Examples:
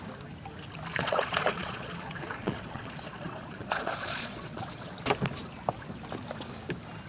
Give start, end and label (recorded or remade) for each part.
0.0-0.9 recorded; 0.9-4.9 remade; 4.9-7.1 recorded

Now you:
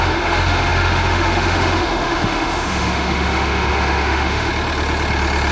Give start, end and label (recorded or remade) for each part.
0.0-4.5 remade; 4.5-5.5 recorded

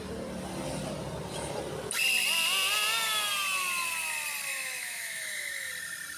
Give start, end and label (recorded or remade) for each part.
0.0-4.5 recorded; 4.5-5.7 remade; 5.7-6.2 recorded

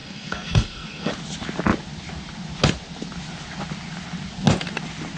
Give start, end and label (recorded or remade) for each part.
0.0-1.1 remade; 1.1-5.2 recorded

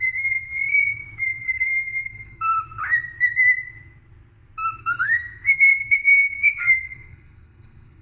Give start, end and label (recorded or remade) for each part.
0.0-0.6 remade; 0.6-1.4 recorded; 1.4-2.5 remade; 2.5-4.8 recorded; 4.8-8.0 remade

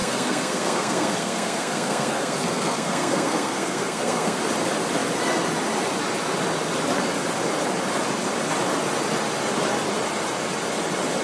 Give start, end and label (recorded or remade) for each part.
0.0-4.4 remade; 4.4-11.2 recorded

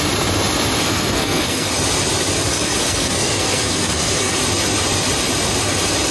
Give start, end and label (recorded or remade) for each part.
0.0-0.8 recorded; 0.8-1.7 remade; 1.7-2.5 recorded; 2.5-4.4 remade; 4.4-6.1 recorded